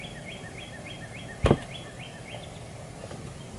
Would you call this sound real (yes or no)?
yes